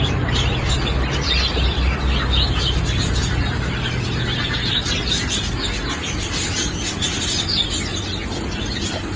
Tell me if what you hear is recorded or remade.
recorded